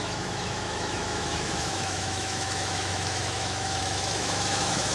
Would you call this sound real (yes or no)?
no